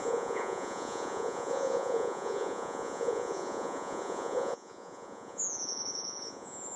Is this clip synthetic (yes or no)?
yes